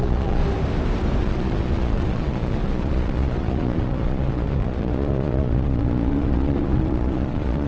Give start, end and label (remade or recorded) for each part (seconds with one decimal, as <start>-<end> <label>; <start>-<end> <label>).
0.0-0.4 remade; 0.4-1.2 recorded; 1.2-7.7 remade